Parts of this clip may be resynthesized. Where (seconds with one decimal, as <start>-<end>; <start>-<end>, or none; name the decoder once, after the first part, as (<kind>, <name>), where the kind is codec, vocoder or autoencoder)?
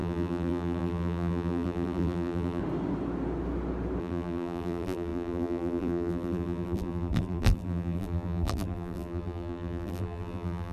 0.0-2.6 (vocoder, BigVGAN v2); 4.0-10.7